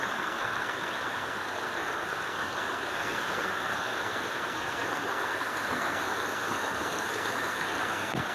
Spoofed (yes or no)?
yes